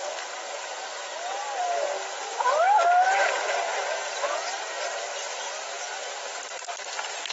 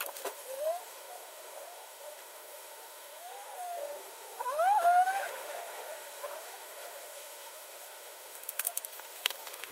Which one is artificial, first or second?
second